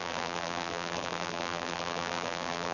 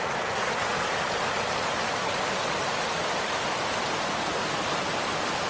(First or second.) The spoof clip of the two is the first